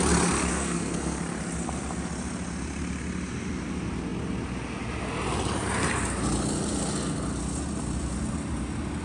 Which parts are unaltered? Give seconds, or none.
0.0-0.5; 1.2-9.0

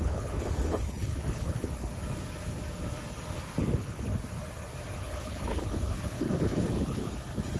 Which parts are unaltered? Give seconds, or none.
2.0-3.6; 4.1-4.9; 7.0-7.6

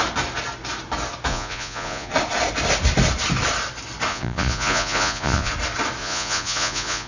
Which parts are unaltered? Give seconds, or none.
0.0-1.3; 2.1-4.1; 5.5-6.0